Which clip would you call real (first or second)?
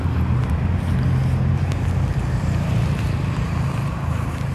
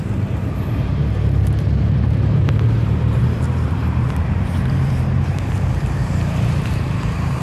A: first